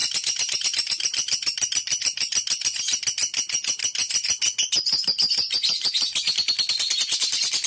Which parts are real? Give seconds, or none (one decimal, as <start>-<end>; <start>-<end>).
2.8-7.7